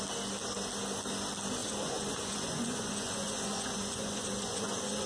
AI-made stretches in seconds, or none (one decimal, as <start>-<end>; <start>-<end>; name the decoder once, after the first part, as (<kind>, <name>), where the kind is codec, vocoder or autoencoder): 1.6-5.1 (vocoder, Vocos)